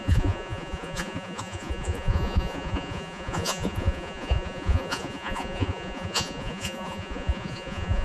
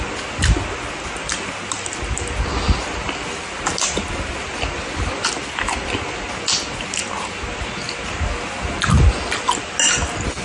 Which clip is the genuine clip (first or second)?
second